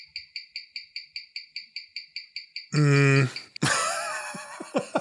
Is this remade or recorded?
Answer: recorded